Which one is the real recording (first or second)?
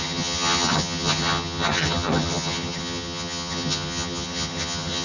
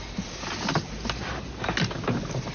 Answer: second